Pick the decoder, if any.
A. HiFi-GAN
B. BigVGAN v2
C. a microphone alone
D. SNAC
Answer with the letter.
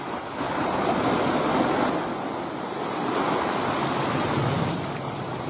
C